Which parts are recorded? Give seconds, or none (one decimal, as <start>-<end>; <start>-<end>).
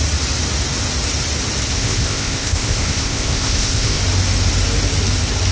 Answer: 0.0-1.7; 4.0-5.5